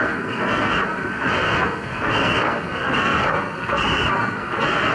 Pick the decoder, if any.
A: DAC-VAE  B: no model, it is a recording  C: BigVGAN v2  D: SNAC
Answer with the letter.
D